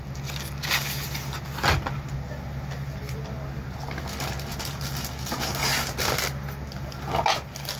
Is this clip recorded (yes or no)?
yes